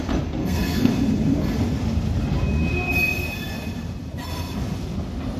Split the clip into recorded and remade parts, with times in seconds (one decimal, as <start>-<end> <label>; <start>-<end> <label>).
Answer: 0.0-0.4 recorded; 0.4-0.9 remade; 0.9-5.4 recorded